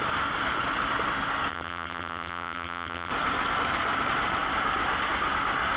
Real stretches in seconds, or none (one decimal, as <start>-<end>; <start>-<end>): 0.0-1.5; 3.1-5.8